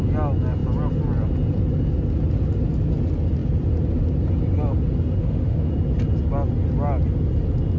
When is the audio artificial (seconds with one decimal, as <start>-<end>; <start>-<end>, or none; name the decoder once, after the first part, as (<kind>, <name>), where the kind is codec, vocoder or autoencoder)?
5.2-5.7 (autoencoder, DAC-VAE)